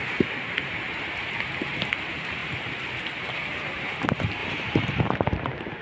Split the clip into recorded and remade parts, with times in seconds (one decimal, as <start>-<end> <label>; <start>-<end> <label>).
0.0-2.4 remade; 2.4-3.3 recorded; 3.3-5.8 remade